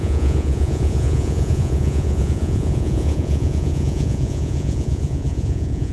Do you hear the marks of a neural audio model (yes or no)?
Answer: yes